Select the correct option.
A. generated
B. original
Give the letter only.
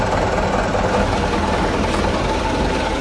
B